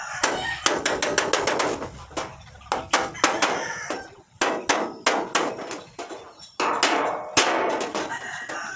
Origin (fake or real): real